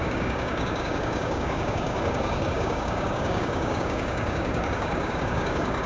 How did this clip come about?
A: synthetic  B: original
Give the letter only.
A